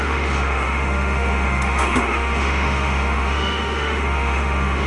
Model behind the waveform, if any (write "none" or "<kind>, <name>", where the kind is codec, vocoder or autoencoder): autoencoder, DAC-VAE